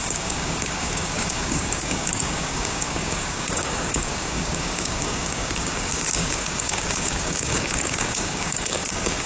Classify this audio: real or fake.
fake